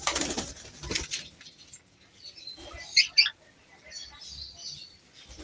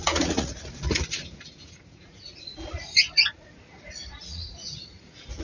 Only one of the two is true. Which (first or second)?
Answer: first